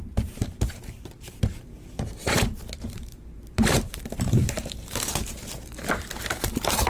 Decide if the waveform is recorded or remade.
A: remade